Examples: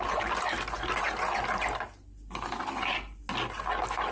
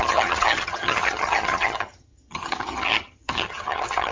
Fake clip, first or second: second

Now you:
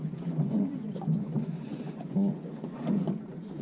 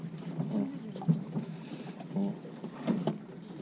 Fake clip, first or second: first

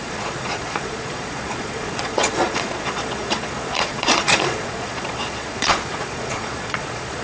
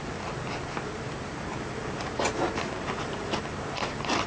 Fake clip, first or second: first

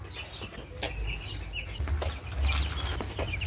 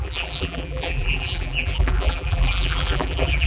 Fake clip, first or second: second